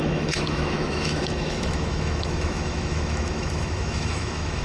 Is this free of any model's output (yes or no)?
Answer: no